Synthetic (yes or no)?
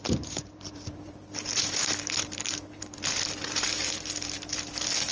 yes